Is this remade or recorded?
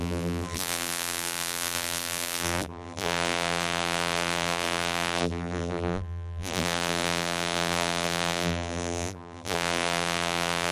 remade